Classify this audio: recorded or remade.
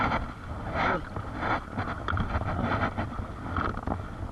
recorded